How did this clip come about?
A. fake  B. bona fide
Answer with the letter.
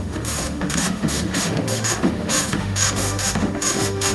A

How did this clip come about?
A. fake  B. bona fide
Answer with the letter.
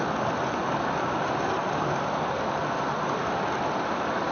B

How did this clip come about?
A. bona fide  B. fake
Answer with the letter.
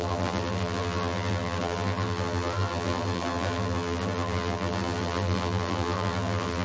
B